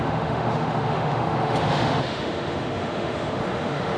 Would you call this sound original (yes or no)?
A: no